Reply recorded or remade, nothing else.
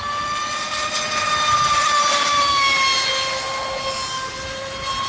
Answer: recorded